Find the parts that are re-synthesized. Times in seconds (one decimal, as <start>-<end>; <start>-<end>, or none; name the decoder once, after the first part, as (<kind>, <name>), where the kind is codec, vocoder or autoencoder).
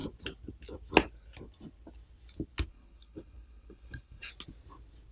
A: 2.7-4.3 (codec, HILCodec)